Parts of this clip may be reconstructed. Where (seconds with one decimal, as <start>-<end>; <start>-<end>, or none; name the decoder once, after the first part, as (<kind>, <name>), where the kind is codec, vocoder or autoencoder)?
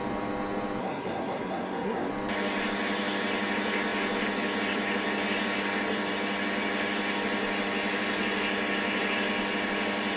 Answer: 0.8-2.1 (codec, SNAC)